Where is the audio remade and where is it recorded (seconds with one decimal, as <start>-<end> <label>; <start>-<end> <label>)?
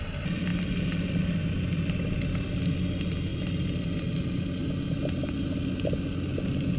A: 0.0-3.3 recorded; 3.3-4.0 remade; 4.0-6.8 recorded